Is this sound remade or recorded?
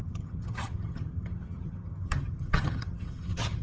remade